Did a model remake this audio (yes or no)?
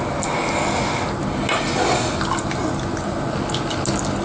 no